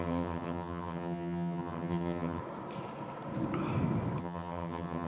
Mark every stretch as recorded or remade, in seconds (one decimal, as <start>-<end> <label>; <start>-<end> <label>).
0.0-2.4 remade; 2.4-4.2 recorded; 4.2-5.1 remade